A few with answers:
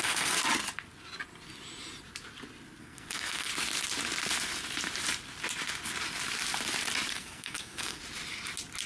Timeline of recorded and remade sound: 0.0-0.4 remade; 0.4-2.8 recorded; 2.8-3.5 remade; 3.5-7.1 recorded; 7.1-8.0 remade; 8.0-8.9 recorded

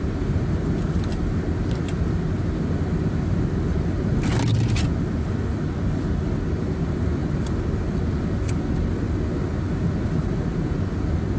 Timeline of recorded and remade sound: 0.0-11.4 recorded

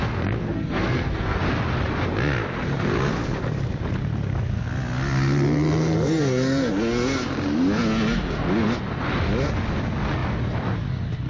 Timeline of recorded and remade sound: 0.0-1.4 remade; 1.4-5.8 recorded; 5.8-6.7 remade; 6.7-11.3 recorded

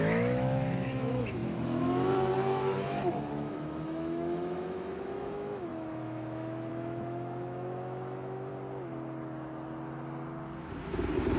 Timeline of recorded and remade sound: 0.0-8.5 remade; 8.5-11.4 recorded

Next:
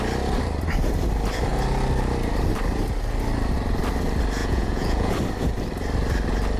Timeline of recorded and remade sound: 0.0-4.4 recorded; 4.4-5.1 remade; 5.1-6.6 recorded

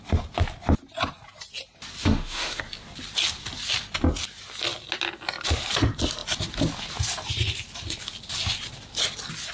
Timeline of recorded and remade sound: 0.0-2.0 recorded; 2.0-2.6 remade; 2.6-9.5 recorded

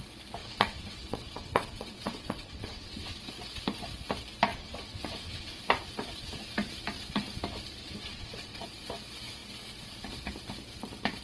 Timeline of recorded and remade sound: 0.0-0.4 recorded; 0.4-3.2 remade; 3.2-4.5 recorded; 4.5-5.5 remade; 5.5-7.8 recorded; 7.8-8.6 remade; 8.6-11.2 recorded